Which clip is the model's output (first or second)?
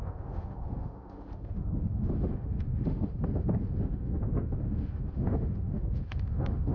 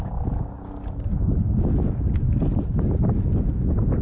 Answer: first